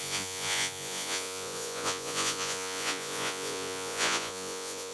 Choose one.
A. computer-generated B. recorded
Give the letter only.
A